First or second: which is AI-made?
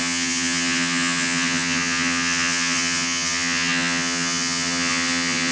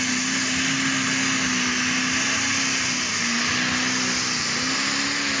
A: first